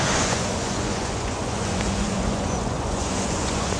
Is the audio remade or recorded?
remade